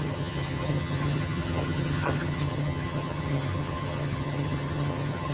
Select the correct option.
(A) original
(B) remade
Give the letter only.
B